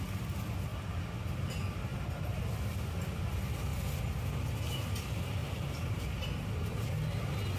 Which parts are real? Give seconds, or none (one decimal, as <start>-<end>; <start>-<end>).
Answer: 0.0-1.9; 2.4-5.4; 7.0-7.6